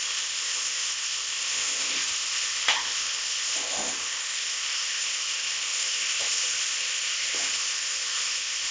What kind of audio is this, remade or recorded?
remade